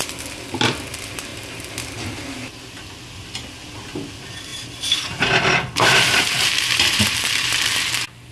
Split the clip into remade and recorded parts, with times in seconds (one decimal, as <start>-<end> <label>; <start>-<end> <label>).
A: 0.0-4.5 recorded; 4.5-7.7 remade; 7.7-8.3 recorded